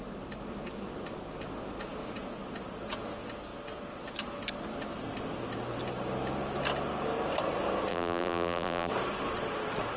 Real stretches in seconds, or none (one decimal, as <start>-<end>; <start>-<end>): 0.0-7.9; 8.9-10.0